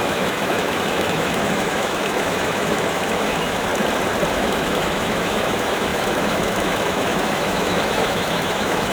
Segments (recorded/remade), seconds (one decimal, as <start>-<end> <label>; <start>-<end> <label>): 0.0-3.7 remade; 3.7-4.3 recorded; 4.3-8.9 remade